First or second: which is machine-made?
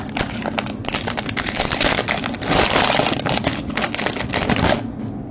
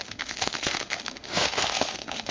second